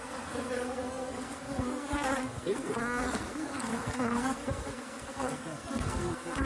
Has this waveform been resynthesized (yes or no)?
yes